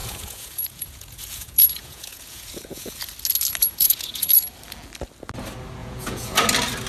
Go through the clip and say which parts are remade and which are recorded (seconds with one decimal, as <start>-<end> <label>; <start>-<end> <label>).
0.0-3.0 remade; 3.0-3.6 recorded; 3.6-4.3 remade; 4.3-5.8 recorded; 5.8-6.4 remade; 6.4-6.9 recorded